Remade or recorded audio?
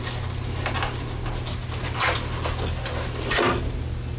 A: recorded